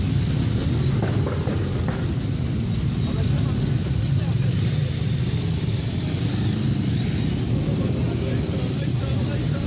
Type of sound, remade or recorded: recorded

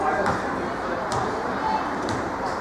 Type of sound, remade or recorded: remade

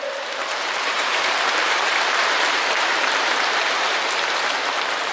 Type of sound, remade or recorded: remade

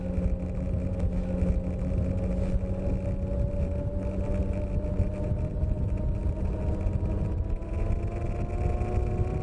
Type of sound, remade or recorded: recorded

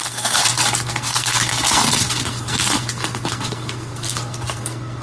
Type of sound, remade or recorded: remade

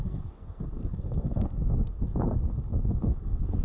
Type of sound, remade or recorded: remade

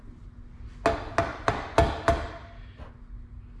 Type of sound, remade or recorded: recorded